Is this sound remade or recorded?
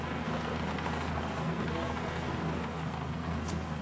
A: remade